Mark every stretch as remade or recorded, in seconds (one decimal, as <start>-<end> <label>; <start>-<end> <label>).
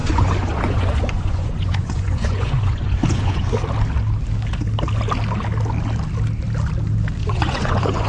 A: 0.0-3.5 remade; 3.5-7.2 recorded; 7.2-8.1 remade